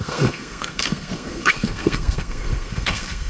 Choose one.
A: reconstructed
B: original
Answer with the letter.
A